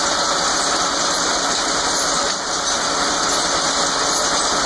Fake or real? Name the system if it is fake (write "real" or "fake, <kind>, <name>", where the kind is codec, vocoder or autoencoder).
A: real